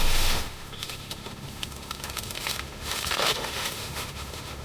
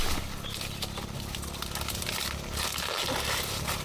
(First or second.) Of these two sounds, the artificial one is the first